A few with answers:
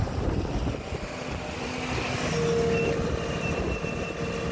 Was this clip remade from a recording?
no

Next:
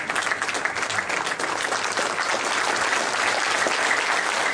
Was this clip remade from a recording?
no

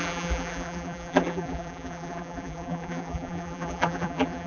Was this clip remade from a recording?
yes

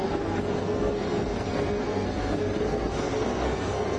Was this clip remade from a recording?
yes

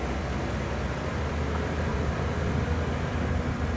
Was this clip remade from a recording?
no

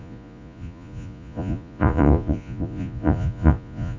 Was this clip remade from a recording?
yes